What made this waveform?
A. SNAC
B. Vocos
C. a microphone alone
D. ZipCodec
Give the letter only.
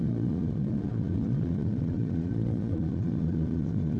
B